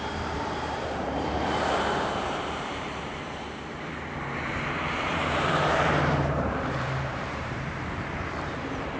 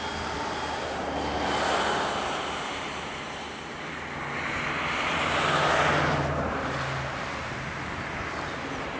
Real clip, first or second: second